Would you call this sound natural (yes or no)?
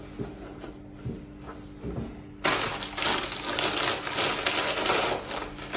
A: yes